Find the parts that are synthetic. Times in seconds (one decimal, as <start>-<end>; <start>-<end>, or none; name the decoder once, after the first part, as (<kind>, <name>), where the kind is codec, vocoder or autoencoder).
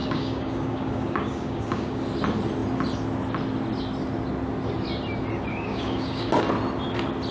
0.0-2.0 (codec, DAC); 5.5-6.3